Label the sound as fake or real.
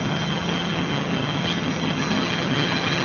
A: fake